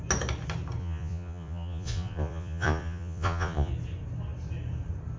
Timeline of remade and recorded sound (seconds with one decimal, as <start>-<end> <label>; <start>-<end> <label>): 0.0-0.8 recorded; 0.8-3.7 remade; 3.7-5.2 recorded